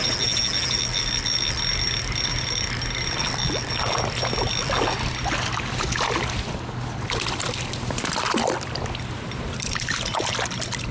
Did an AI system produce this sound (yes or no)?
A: no